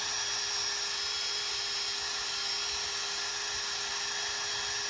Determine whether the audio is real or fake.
real